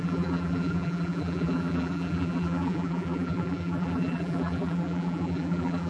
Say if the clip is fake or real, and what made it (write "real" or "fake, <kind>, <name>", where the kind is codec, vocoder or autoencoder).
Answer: fake, vocoder, BigVGAN v2